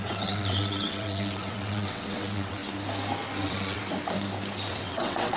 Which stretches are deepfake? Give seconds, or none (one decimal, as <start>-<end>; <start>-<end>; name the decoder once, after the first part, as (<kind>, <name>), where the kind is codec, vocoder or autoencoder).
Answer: 0.0-2.6 (vocoder, WaveNeXt); 3.4-3.8; 4.7-5.4